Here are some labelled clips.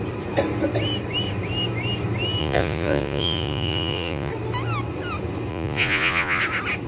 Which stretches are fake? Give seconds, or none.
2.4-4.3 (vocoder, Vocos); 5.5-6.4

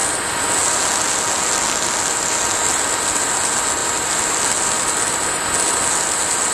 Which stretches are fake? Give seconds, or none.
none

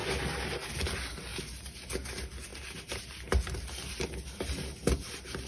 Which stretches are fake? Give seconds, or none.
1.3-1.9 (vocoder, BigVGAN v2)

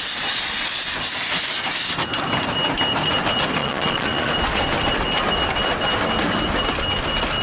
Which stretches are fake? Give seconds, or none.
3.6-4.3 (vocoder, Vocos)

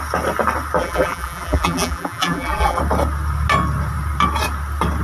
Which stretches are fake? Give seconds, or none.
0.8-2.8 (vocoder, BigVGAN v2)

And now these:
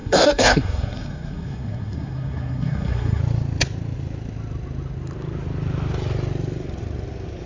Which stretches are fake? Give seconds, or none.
0.0-3.2 (codec, SNAC)

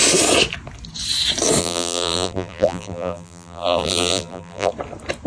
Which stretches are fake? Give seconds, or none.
1.6-4.7 (vocoder, BigVGAN v2)